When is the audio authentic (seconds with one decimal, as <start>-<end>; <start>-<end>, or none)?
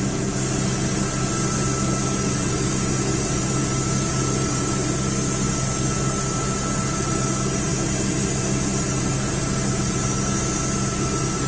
0.0-11.5